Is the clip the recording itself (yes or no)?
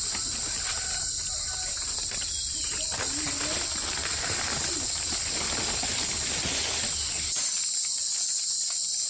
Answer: yes